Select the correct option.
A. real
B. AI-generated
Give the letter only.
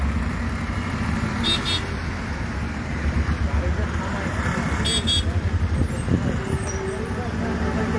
A